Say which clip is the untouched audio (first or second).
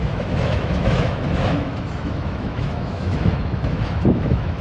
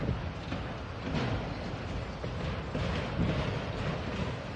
second